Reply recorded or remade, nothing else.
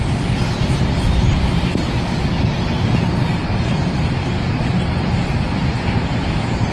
recorded